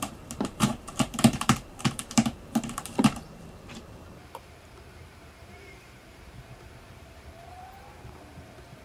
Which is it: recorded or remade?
remade